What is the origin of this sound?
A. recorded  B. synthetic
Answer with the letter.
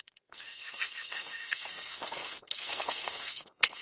B